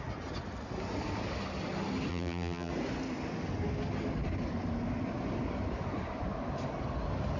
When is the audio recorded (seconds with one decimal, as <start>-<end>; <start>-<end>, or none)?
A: 0.0-2.1; 2.7-7.4